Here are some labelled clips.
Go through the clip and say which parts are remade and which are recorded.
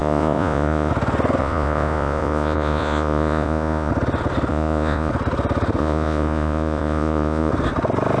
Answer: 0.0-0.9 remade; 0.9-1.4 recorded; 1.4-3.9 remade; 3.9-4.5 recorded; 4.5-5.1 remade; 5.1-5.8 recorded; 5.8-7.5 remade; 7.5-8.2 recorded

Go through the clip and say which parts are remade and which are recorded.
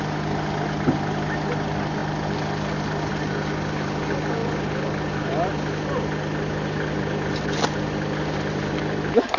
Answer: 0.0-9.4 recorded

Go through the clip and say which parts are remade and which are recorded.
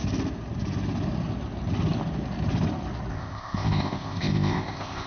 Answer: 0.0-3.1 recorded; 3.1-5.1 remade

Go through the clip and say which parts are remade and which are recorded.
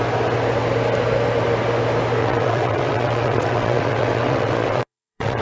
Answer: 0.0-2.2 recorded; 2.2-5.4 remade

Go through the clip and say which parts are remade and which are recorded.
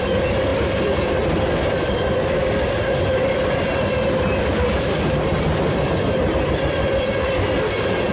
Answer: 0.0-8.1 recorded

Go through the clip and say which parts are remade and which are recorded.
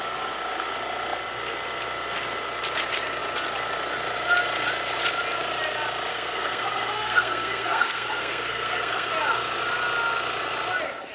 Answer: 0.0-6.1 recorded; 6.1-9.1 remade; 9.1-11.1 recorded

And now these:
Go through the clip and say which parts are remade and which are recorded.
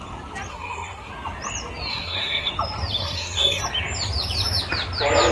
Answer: 0.0-0.5 recorded; 0.5-1.1 remade; 1.1-1.9 recorded; 1.9-2.5 remade; 2.5-3.0 recorded; 3.0-3.6 remade; 3.6-5.3 recorded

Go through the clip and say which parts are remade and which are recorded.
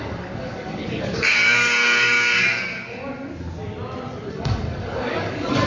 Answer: 0.0-3.0 remade; 3.0-4.3 recorded; 4.3-5.7 remade